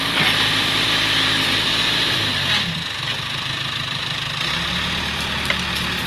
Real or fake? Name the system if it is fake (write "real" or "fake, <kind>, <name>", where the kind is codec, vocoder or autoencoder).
fake, vocoder, BigVGAN v2